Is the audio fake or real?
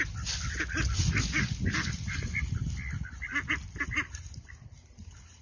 real